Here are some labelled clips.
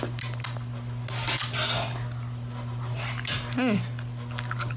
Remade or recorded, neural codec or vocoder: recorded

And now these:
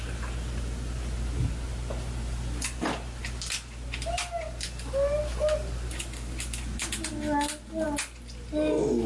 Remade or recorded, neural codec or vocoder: recorded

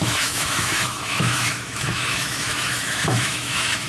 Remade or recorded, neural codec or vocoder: remade, autoencoder, DAC-VAE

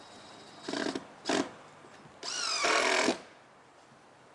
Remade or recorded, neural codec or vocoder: remade, vocoder, BigVGAN v2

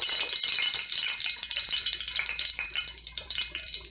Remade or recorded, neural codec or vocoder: remade, vocoder, BigVGAN v2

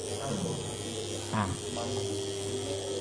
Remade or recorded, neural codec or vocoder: recorded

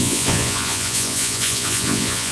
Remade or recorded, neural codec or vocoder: remade, vocoder, Vocos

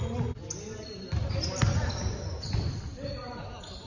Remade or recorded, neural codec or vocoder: recorded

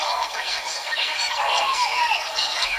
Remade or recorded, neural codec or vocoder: remade, codec, SNAC